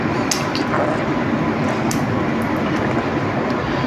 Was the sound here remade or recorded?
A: recorded